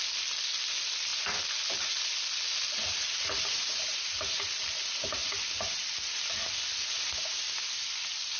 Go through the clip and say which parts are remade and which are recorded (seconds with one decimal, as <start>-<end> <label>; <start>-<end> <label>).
0.0-8.4 recorded